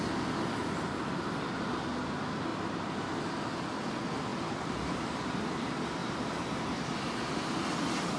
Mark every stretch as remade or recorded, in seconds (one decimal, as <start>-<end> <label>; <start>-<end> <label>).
0.0-2.5 recorded; 2.5-3.2 remade; 3.2-4.3 recorded; 4.3-5.2 remade; 5.2-6.0 recorded; 6.0-7.5 remade; 7.5-8.2 recorded